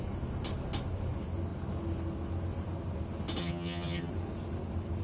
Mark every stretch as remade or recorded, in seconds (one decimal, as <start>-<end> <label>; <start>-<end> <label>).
0.0-3.4 recorded; 3.4-4.1 remade; 4.1-5.0 recorded